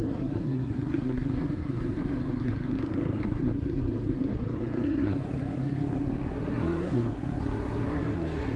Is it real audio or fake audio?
fake